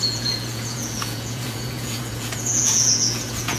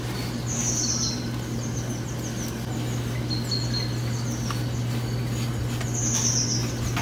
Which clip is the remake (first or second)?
first